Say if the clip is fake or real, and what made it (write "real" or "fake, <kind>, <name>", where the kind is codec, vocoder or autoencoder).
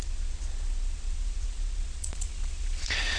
fake, vocoder, Vocos